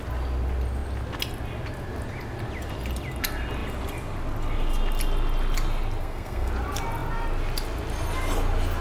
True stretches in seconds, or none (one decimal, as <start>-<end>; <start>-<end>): 0.0-6.0; 6.5-8.8